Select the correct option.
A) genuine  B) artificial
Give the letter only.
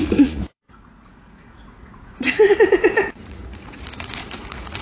B